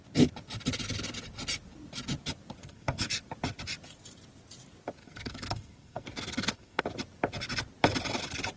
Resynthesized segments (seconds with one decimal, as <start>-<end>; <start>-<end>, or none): 2.6-3.2; 5.0-6.8